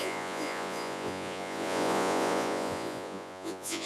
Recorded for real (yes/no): no